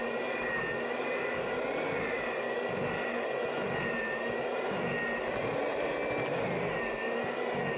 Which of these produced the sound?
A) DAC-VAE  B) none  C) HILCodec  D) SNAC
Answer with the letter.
B